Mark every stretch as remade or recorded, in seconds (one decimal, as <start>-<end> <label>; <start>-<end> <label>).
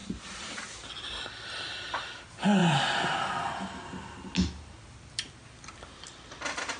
0.0-6.8 recorded